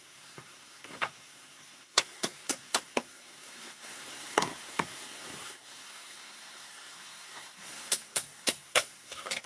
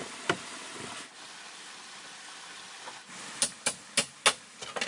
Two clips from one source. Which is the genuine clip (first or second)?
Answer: second